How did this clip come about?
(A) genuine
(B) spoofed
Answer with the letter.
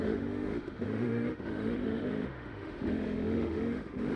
B